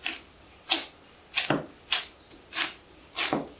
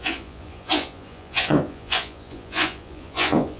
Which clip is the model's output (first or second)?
second